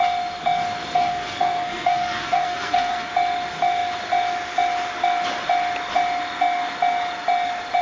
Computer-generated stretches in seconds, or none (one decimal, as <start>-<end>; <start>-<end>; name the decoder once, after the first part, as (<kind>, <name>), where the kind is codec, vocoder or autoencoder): 0.9-3.1 (codec, SNAC)